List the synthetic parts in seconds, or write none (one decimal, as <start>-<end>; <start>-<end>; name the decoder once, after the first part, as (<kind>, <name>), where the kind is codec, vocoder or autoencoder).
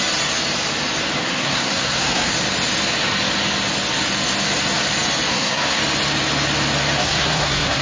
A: 1.2-2.3 (codec, SNAC); 5.3-5.8; 7.0-7.8